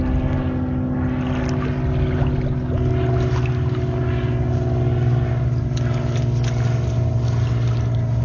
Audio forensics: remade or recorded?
recorded